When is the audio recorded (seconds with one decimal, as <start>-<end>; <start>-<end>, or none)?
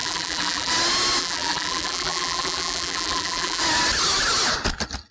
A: 0.7-1.2; 3.6-5.1